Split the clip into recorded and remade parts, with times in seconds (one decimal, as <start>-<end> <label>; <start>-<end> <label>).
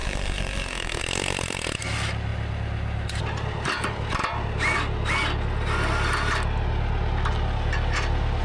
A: 0.0-1.0 remade; 1.0-8.4 recorded